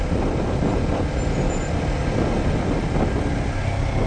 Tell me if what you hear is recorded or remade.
recorded